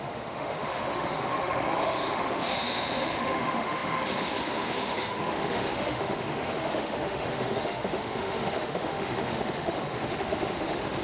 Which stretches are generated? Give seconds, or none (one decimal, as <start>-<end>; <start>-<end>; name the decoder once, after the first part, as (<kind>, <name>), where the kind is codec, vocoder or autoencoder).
0.0-11.0 (autoencoder, DAC-VAE)